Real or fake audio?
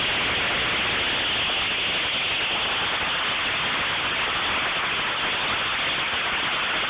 real